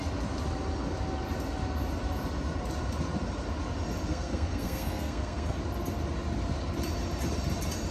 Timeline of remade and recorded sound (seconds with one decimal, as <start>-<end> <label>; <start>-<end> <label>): 0.0-4.1 recorded; 4.1-5.6 remade; 5.6-7.9 recorded

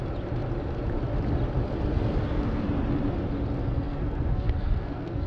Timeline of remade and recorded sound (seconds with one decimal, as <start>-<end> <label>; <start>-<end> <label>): 0.0-3.6 recorded; 3.6-5.3 remade

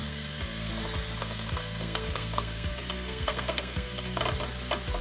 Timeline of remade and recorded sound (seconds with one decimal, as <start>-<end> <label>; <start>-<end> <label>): 0.0-0.7 remade; 0.7-1.2 recorded; 1.2-4.2 remade; 4.2-5.0 recorded

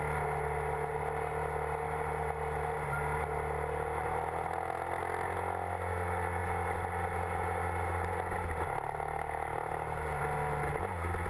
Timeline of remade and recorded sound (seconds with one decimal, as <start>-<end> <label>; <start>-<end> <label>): 0.0-11.3 recorded

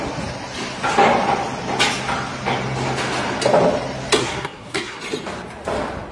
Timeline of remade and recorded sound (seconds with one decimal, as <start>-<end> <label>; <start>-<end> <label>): 0.0-4.2 recorded; 4.2-5.0 remade; 5.0-6.1 recorded

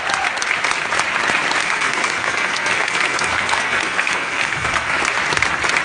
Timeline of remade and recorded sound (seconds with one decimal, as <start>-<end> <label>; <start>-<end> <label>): 0.0-1.6 recorded; 1.6-4.9 remade; 4.9-5.8 recorded